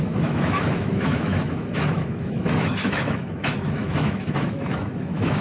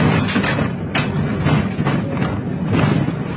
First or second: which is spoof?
first